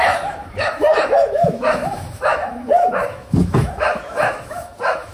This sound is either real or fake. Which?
fake